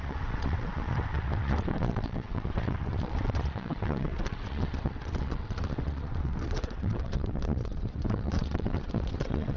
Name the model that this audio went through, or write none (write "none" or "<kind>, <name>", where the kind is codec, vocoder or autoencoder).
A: vocoder, WaveNeXt